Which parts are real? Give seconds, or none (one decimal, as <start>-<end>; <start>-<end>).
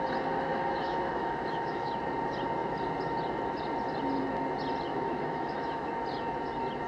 0.0-0.5; 1.9-4.9; 5.9-6.9